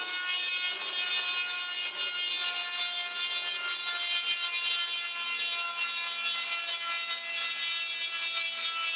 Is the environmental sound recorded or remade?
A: recorded